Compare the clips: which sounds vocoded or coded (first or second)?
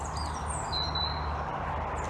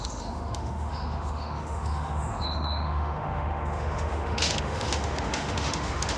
second